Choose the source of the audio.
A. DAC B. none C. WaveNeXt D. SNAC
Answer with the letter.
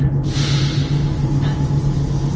B